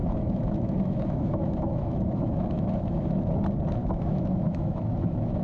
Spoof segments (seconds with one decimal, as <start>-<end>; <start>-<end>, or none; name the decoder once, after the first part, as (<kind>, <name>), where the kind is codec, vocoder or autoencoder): 0.0-3.2 (autoencoder, DAC-VAE); 3.8-5.4